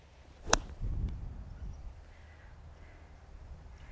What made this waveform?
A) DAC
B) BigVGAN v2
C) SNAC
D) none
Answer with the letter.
D